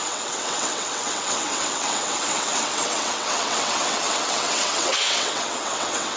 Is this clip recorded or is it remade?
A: remade